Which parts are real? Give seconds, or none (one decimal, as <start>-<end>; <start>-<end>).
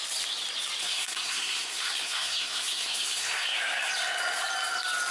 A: 0.0-0.8; 3.9-5.1